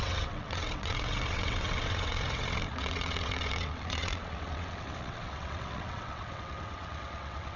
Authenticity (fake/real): fake